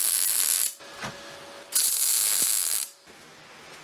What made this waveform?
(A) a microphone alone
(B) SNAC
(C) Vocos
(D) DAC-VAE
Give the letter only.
A